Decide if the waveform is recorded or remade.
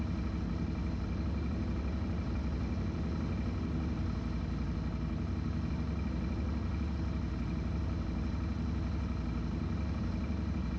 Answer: recorded